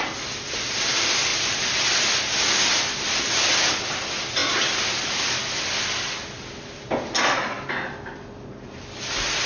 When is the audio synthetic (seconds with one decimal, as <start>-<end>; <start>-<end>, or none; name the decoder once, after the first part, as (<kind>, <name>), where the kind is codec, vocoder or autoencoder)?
none